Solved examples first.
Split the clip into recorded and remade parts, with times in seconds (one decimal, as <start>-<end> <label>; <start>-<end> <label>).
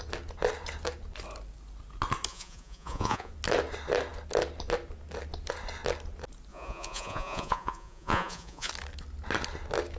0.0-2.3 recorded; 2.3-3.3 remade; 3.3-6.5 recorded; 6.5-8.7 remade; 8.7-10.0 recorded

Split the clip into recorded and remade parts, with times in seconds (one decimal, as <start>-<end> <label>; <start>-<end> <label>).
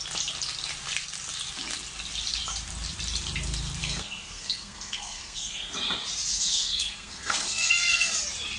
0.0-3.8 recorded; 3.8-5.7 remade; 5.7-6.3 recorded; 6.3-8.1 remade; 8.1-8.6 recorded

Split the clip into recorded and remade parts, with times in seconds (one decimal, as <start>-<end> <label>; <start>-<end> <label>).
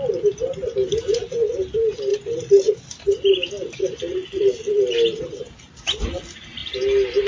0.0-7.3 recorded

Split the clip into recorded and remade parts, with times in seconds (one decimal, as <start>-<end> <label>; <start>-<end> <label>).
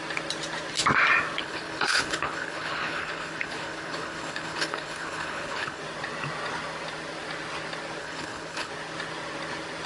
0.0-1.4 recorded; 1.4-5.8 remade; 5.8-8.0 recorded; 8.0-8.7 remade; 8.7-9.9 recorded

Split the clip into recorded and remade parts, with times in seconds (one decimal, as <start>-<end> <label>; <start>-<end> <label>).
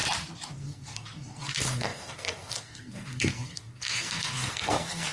0.0-0.5 recorded; 0.5-5.1 remade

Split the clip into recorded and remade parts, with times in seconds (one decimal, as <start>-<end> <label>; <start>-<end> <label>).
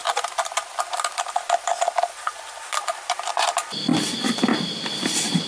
0.0-3.3 remade; 3.3-3.9 recorded; 3.9-5.0 remade; 5.0-5.5 recorded